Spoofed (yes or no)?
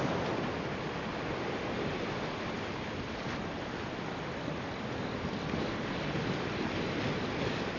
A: no